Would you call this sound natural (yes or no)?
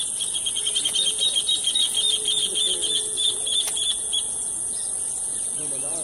no